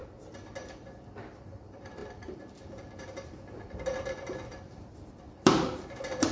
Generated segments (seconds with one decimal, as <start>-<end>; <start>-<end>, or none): 1.4-6.3

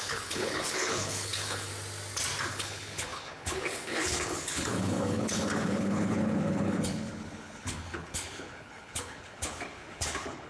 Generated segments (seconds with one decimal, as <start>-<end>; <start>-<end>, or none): 0.0-1.7; 2.5-10.5

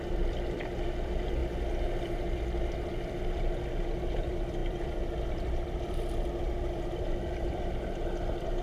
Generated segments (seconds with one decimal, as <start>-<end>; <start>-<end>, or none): 0.0-1.4; 3.2-8.6